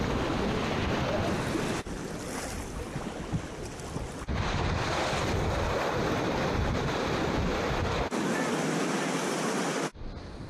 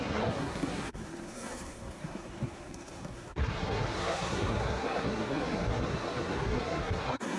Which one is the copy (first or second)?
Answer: second